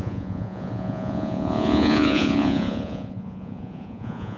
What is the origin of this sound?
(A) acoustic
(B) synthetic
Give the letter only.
B